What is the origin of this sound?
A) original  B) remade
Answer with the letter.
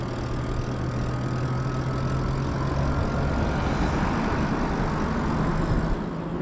A